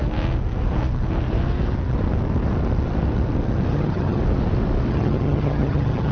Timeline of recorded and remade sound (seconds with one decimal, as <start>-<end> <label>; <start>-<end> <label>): 0.0-3.7 recorded; 3.7-4.2 remade; 4.2-4.9 recorded; 4.9-6.1 remade